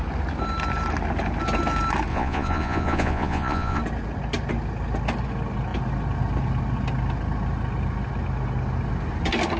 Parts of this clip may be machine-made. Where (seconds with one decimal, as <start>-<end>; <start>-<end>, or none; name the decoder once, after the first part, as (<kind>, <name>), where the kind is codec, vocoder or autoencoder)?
2.1-3.8 (vocoder, Vocos)